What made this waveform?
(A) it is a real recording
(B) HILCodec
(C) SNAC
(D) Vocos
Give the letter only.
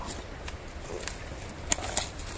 A